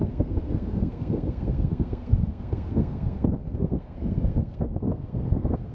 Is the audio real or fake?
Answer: fake